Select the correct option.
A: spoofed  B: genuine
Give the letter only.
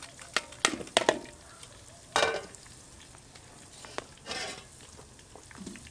B